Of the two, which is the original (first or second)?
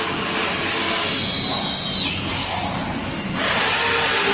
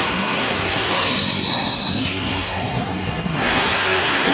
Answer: first